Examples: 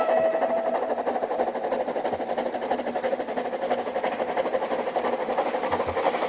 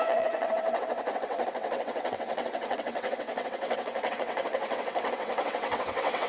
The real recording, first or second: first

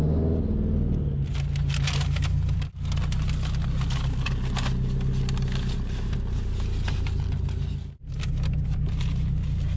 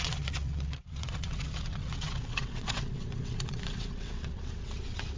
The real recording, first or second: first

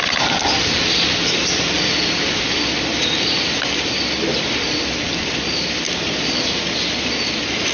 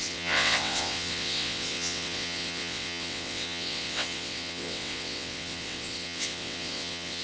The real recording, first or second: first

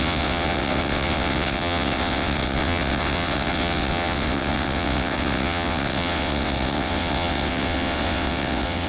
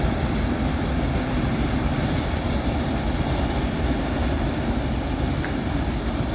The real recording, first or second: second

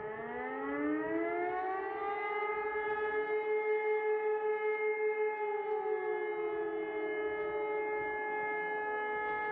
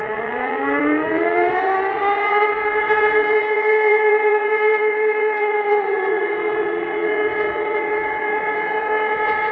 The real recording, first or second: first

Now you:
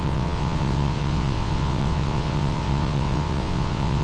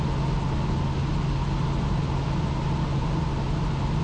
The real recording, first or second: second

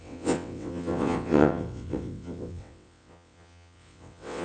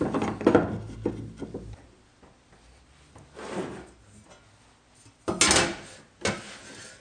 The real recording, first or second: second